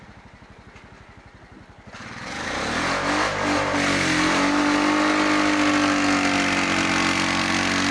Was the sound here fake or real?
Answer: real